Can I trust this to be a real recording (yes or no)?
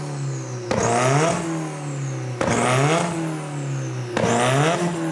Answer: yes